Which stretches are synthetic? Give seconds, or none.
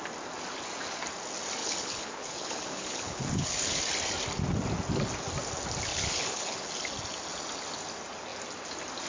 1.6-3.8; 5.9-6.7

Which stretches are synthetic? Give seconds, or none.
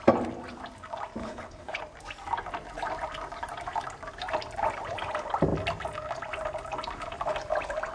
1.2-1.8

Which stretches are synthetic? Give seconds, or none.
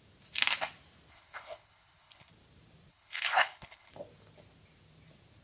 1.1-2.3; 2.9-3.9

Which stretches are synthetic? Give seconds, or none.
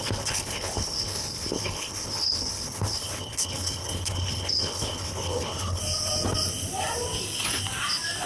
0.0-5.8